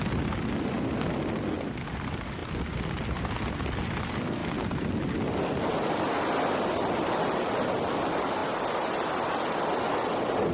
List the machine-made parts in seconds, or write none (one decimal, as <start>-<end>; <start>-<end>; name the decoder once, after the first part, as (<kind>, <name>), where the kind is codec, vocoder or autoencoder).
none

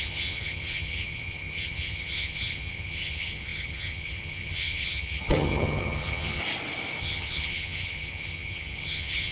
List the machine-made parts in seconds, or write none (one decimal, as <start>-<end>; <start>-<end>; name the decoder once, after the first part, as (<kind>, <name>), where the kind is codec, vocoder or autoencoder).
0.0-6.4 (vocoder, HiFi-GAN); 7.0-9.3

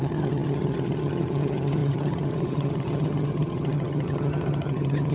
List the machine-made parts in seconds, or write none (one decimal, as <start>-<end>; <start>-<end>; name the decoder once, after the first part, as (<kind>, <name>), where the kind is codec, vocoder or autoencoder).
0.0-5.1 (vocoder, HiFi-GAN)